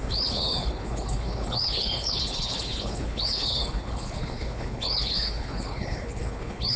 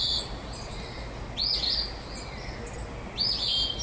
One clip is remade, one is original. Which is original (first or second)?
second